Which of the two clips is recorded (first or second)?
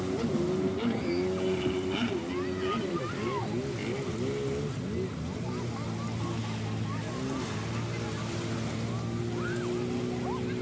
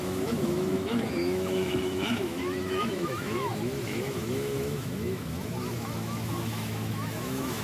first